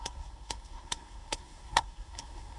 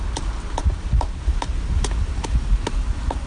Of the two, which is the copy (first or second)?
first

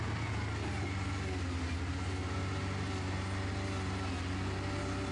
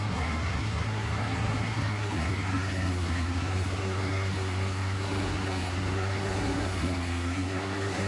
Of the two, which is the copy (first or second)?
second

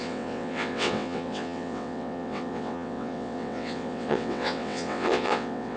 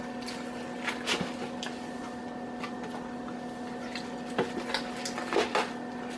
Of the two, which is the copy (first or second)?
first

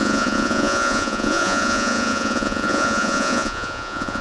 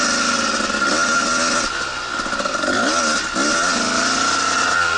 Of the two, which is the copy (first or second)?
first